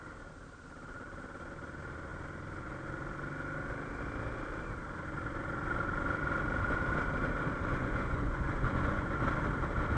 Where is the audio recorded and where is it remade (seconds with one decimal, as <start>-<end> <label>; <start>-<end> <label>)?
0.0-7.7 recorded; 7.7-9.2 remade; 9.2-10.0 recorded